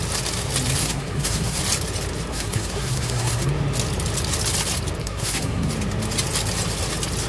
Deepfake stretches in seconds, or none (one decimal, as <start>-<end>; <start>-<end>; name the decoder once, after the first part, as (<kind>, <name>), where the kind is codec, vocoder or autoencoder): 0.8-1.6 (codec, SNAC); 2.3-3.5; 5.0-5.7